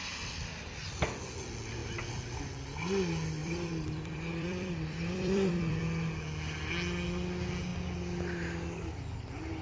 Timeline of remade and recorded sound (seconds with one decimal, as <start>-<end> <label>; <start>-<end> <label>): 0.0-3.4 recorded; 3.4-5.8 remade; 5.8-9.6 recorded